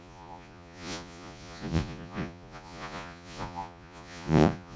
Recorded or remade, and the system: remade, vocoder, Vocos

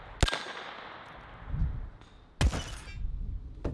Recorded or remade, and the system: recorded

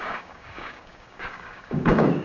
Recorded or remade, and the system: remade, codec, DAC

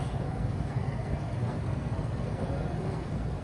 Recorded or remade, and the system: remade, codec, SNAC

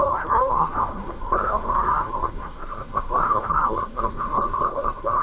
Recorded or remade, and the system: remade, codec, SNAC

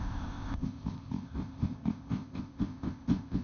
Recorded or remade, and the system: remade, codec, ZipCodec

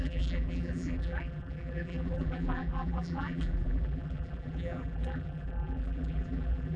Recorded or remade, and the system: remade, vocoder, BigVGAN v2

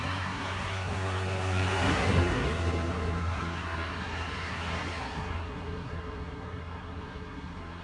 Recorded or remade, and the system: remade, codec, SNAC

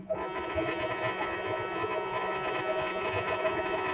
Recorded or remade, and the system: remade, vocoder, Vocos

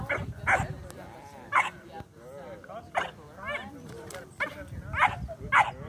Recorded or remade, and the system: recorded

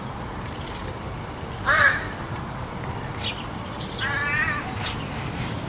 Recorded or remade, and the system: remade, vocoder, BigVGAN v2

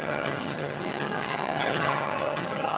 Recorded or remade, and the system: remade, vocoder, HiFi-GAN